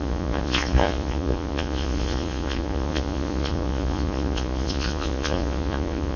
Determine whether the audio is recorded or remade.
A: remade